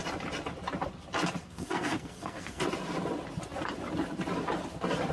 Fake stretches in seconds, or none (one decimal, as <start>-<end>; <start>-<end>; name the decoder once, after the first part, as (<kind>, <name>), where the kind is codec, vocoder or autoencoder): 1.4-2.6 (codec, SNAC)